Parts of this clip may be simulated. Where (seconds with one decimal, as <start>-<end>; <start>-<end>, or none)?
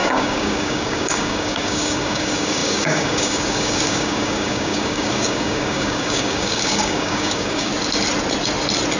0.0-7.7